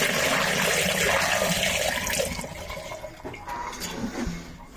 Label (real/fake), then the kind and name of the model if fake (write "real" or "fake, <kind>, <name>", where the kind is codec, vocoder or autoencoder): real